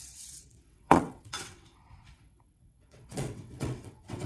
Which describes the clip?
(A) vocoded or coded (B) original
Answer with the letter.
A